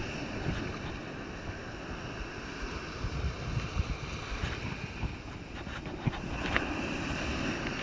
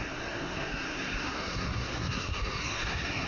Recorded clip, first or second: first